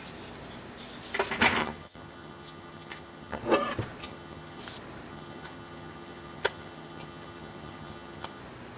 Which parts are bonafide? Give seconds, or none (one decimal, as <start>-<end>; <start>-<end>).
0.0-1.6; 3.4-4.0; 4.6-5.1; 8.4-8.8